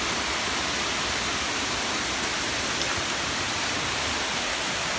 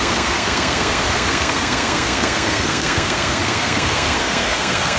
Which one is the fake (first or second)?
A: second